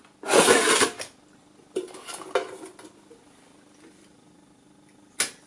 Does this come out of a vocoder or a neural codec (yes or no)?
no